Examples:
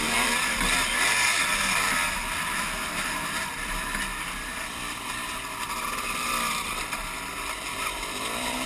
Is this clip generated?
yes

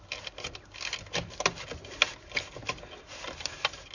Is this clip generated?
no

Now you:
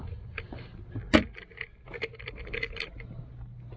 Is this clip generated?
no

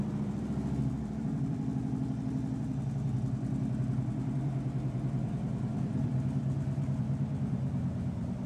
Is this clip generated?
yes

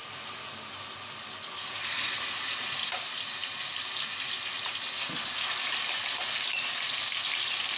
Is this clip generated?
no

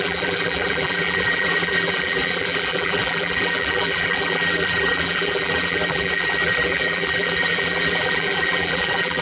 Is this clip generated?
yes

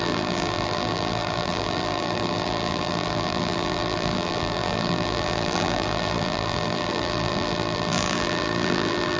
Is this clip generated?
yes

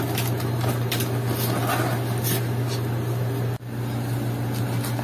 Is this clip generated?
no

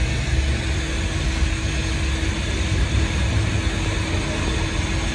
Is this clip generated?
no